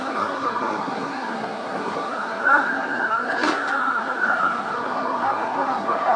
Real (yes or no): no